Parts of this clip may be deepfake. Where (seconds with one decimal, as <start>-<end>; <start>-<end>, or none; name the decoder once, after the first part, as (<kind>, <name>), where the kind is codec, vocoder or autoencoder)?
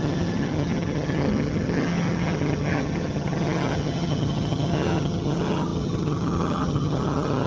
0.0-7.5 (vocoder, HiFi-GAN)